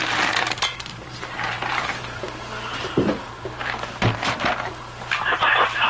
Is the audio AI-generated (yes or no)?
yes